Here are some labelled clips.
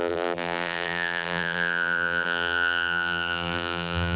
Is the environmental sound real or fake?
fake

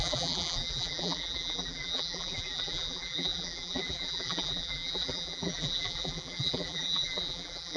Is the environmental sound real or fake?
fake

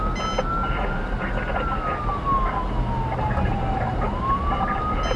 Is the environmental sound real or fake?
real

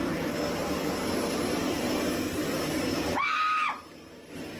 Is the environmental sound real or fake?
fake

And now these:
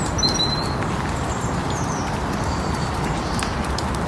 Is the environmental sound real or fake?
real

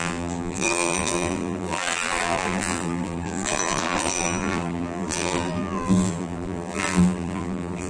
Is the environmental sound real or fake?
fake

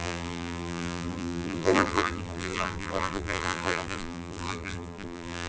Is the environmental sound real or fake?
fake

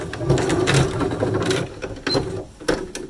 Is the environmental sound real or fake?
real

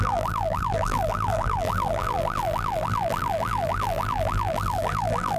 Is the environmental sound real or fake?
fake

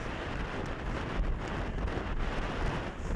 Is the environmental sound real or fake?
real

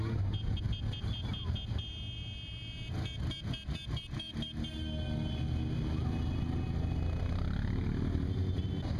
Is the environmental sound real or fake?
real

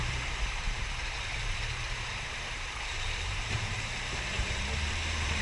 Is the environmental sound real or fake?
fake